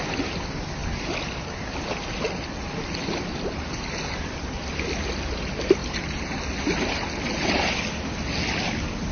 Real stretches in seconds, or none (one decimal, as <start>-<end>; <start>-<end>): 0.0-9.1